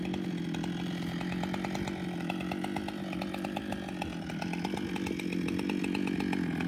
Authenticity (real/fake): real